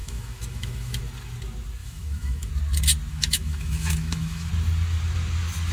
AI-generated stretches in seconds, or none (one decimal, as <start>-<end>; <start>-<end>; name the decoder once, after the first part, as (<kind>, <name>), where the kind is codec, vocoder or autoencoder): 0.0-1.0 (autoencoder, DAC-VAE); 1.8-2.5; 3.1-4.5